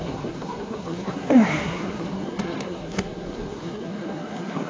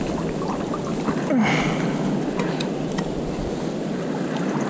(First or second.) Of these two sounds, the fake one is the first